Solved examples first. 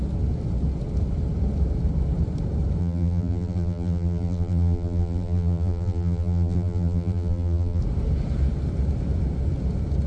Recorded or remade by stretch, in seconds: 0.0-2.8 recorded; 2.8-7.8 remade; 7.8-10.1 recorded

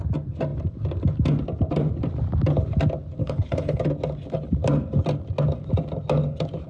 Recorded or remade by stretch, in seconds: 0.0-3.2 recorded; 3.2-3.8 remade; 3.8-6.7 recorded

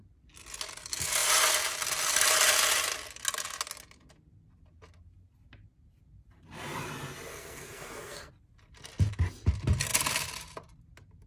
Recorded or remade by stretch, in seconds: 0.0-7.3 recorded; 7.3-8.3 remade; 8.3-11.3 recorded

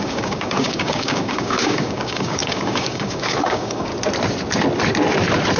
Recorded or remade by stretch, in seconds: 0.0-3.9 remade; 3.9-5.6 recorded

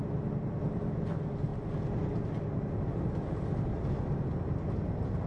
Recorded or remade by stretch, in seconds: 0.0-5.3 recorded

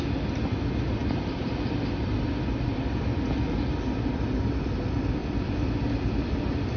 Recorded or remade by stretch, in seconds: 0.0-1.0 recorded; 1.0-1.8 remade; 1.8-5.2 recorded; 5.2-6.8 remade